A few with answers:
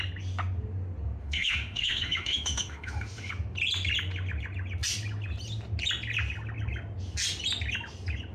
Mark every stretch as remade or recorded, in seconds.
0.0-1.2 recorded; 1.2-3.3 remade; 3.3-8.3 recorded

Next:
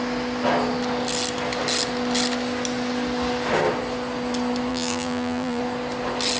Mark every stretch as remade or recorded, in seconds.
0.0-4.7 recorded; 4.7-5.6 remade; 5.6-6.4 recorded

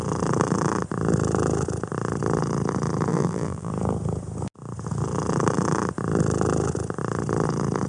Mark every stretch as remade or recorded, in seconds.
0.0-3.1 recorded; 3.1-3.7 remade; 3.7-7.9 recorded

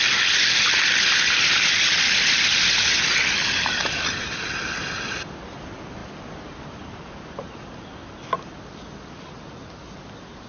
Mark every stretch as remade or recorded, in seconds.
0.0-10.5 recorded